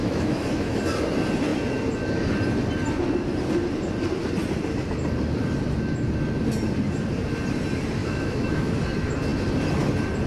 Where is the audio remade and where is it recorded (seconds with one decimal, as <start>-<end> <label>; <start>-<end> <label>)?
0.0-0.8 remade; 0.8-8.0 recorded; 8.0-8.7 remade; 8.7-10.3 recorded